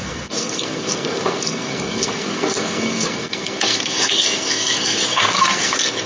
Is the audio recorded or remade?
remade